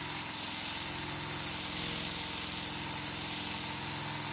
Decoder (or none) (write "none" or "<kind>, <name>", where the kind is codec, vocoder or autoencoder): none